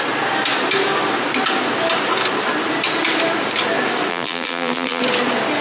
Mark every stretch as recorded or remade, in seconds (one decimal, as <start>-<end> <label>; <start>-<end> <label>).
0.0-4.1 recorded; 4.1-5.0 remade; 5.0-5.6 recorded